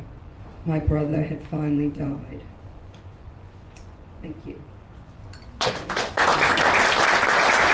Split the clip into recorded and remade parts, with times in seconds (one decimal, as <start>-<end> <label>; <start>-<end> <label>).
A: 0.0-6.3 remade; 6.3-7.7 recorded